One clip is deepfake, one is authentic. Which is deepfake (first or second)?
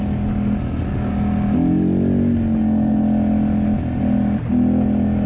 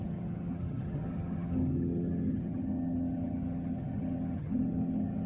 second